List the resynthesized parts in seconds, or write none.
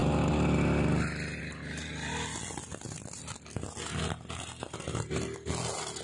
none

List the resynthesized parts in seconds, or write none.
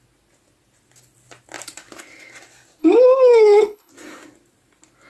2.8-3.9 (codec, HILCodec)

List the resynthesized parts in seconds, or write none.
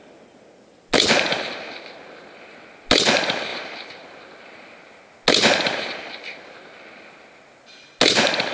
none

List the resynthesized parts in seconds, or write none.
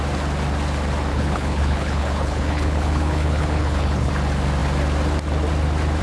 1.1-4.1 (codec, HILCodec)